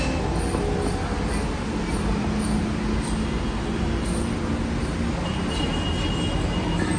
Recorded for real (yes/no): yes